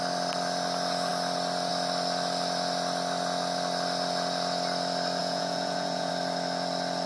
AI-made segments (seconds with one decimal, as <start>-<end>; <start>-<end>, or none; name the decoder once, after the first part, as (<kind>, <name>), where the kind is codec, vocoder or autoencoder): 5.2-6.1 (vocoder, Vocos)